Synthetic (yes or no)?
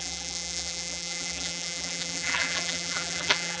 yes